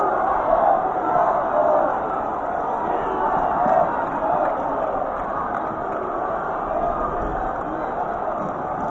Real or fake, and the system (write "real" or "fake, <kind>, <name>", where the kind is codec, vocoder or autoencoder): real